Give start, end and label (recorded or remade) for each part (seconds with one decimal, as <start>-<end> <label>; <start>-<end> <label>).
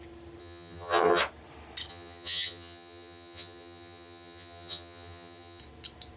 0.0-0.4 recorded; 0.4-1.2 remade; 1.2-1.9 recorded; 1.9-5.6 remade; 5.6-6.2 recorded